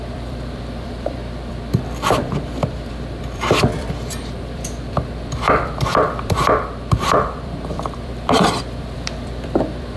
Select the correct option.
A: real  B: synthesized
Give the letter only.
B